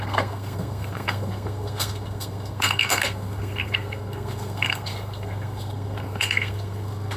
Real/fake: fake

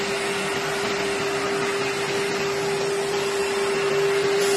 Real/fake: real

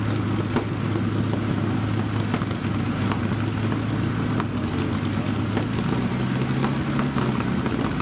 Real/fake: real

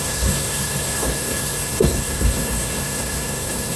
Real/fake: fake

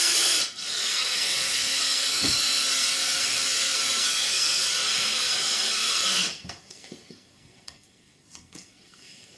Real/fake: fake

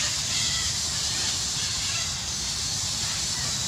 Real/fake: real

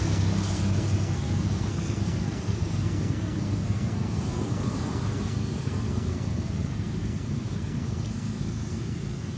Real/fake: fake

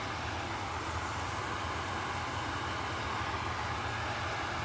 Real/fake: real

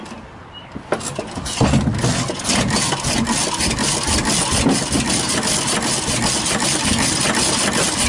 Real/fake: real